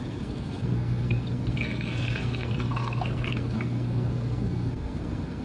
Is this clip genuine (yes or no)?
no